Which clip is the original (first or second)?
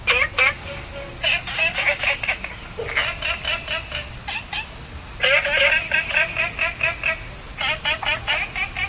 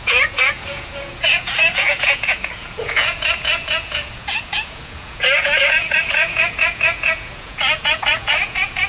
first